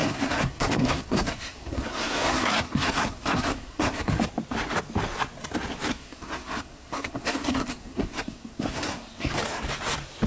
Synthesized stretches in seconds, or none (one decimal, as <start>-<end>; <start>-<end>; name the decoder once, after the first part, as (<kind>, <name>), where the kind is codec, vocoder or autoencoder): 0.0-4.1 (codec, SNAC); 5.9-9.3